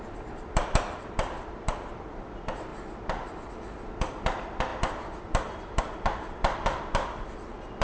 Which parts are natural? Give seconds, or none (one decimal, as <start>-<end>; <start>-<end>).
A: 2.7-3.5